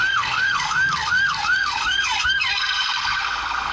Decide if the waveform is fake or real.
fake